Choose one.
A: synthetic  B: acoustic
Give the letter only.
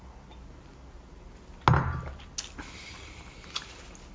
B